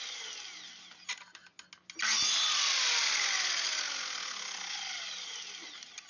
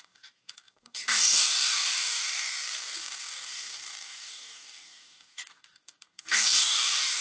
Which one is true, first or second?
first